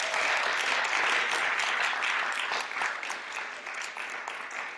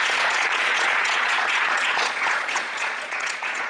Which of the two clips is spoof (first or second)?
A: second